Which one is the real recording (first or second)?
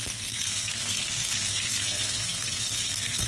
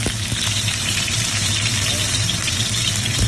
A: second